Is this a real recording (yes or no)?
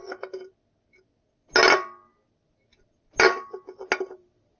yes